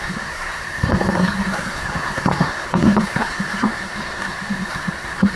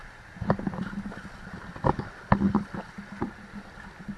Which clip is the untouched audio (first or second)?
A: second